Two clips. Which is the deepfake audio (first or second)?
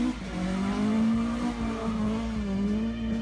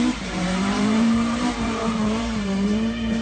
second